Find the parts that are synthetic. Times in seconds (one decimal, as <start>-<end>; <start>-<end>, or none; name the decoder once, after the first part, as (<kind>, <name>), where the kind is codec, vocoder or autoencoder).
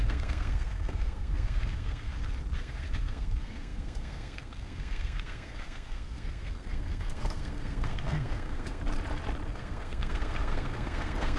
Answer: 0.0-2.1 (codec, SNAC); 2.6-8.8; 9.5-11.4